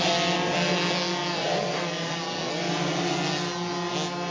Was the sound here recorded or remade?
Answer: recorded